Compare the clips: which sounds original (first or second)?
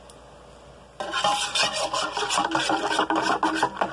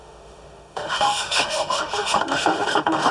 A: first